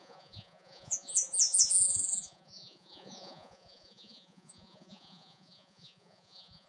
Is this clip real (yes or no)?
no